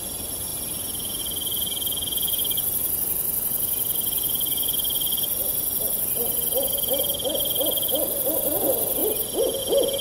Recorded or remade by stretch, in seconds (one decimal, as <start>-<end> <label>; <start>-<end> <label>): 0.0-10.0 recorded